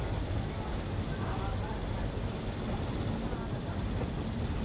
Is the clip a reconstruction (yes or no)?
no